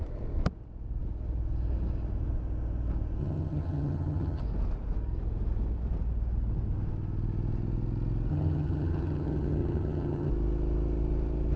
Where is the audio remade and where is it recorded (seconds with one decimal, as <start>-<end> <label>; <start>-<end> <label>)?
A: 0.0-3.2 recorded; 3.2-4.4 remade; 4.4-8.3 recorded; 8.3-10.3 remade; 10.3-11.6 recorded